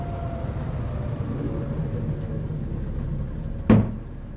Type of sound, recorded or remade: recorded